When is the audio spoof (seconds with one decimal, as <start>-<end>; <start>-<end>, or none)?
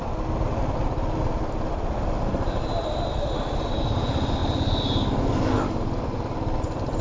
none